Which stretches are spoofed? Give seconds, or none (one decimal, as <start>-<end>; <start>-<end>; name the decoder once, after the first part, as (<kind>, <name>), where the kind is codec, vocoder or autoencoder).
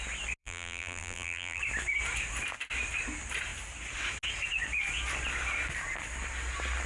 0.4-1.6 (vocoder, BigVGAN v2)